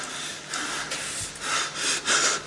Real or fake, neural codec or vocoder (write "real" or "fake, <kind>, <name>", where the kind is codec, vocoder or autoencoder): real